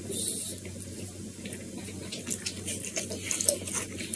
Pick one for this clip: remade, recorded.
recorded